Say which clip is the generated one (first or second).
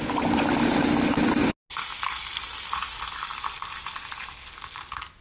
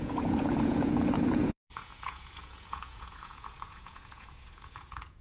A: second